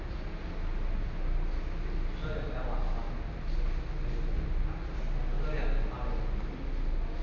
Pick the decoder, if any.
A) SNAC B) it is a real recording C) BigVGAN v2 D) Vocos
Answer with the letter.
B